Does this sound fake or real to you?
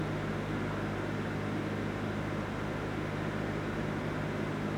real